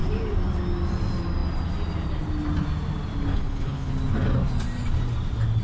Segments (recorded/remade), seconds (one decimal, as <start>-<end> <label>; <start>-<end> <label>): 0.0-3.3 recorded; 3.3-3.9 remade; 3.9-5.6 recorded